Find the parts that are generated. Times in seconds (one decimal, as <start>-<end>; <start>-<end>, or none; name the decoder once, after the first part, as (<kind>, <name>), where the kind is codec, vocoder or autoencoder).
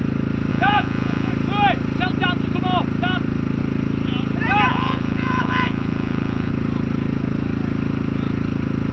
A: 0.5-1.3 (vocoder, Vocos); 4.7-6.5